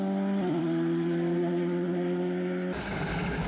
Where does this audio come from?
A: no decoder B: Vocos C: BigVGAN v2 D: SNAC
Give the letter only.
A